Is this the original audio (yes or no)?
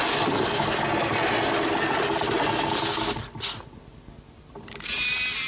yes